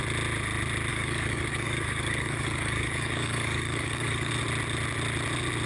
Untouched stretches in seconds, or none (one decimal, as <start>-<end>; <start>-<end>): 0.0-0.9; 4.3-5.7